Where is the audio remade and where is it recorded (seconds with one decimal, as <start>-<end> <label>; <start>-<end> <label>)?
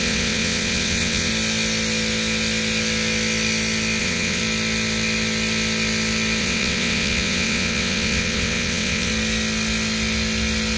0.0-1.3 remade; 1.3-4.0 recorded; 4.0-4.4 remade; 4.4-6.4 recorded; 6.4-9.1 remade; 9.1-10.8 recorded